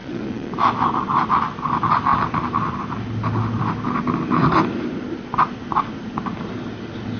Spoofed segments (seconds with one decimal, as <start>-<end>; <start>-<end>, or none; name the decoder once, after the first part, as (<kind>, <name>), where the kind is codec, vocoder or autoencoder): 0.0-0.5 (vocoder, Vocos)